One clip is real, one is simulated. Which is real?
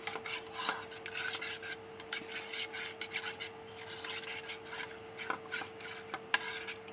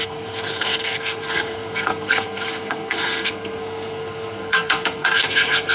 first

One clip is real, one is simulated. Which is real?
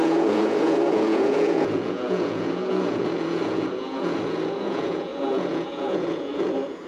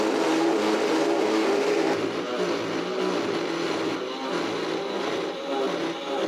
second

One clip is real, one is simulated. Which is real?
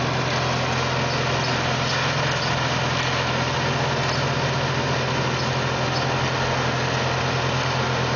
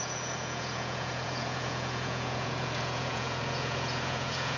first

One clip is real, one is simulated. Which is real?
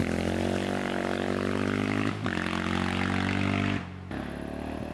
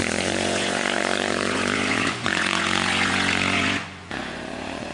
first